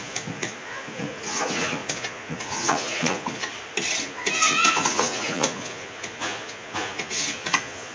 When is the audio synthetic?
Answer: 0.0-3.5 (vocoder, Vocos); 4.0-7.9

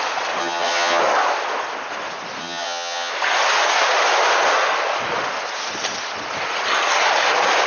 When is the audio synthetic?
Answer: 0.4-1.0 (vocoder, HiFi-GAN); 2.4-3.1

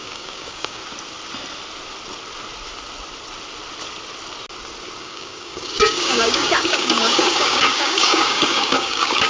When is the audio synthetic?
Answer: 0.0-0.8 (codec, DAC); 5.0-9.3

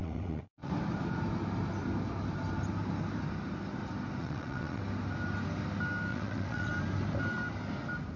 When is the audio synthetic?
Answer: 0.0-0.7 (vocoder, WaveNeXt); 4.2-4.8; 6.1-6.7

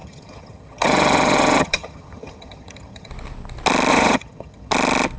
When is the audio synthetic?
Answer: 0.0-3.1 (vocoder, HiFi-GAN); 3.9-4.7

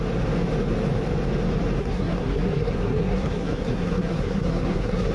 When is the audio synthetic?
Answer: 1.8-5.1 (codec, SNAC)